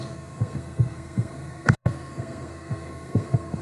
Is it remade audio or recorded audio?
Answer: remade